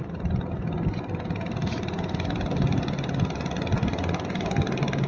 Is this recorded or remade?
recorded